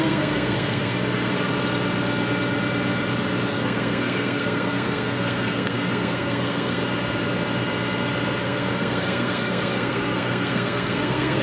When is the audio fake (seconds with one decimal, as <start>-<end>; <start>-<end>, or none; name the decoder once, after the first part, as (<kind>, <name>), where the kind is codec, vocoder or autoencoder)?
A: 0.0-1.5 (codec, SNAC); 3.5-6.8; 8.4-11.4